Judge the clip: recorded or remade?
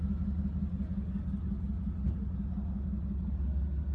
recorded